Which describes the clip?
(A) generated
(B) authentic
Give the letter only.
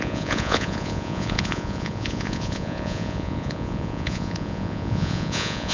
A